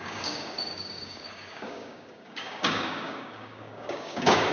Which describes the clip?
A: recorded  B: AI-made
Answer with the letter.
B